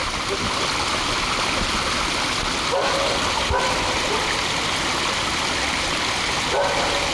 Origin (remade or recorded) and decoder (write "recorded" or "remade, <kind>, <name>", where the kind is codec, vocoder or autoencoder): recorded